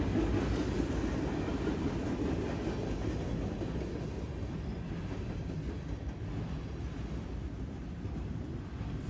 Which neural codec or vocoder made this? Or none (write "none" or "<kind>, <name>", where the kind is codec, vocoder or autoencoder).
none